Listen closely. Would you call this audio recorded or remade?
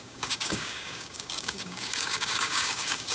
remade